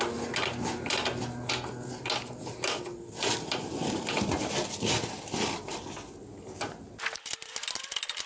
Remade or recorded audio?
recorded